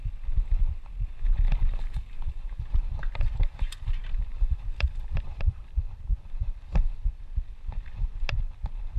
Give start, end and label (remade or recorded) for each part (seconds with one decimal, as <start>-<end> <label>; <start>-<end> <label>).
0.0-1.7 recorded; 1.7-3.0 remade; 3.0-4.3 recorded; 4.3-5.7 remade; 5.7-9.0 recorded